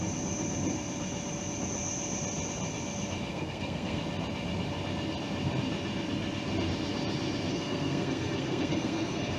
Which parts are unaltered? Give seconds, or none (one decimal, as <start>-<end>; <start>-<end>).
0.0-3.3; 4.0-7.5